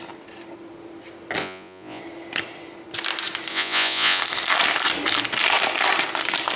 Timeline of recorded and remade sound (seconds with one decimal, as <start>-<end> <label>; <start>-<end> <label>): 0.0-1.4 recorded; 1.4-2.0 remade; 2.0-3.5 recorded; 3.5-4.2 remade; 4.2-6.6 recorded